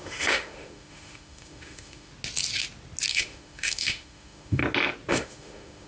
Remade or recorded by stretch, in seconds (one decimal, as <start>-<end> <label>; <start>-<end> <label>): 0.0-2.1 remade; 2.1-3.1 recorded; 3.1-4.6 remade; 4.6-5.1 recorded; 5.1-5.9 remade